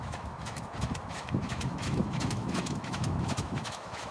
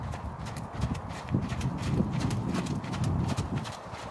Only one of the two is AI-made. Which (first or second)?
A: first